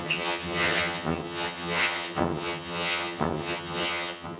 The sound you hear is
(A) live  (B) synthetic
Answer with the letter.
B